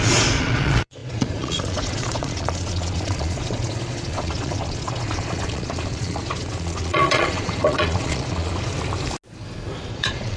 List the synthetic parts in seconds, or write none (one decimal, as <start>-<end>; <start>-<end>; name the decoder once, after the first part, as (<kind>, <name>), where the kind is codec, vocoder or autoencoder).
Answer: 0.0-8.7 (vocoder, Vocos); 9.9-10.4